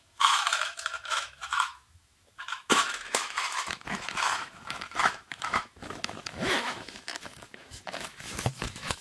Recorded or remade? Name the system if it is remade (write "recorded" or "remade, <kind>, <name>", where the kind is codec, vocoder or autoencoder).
remade, autoencoder, DAC-VAE